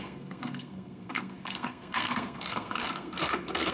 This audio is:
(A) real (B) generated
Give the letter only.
B